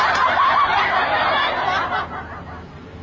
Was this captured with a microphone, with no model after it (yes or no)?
yes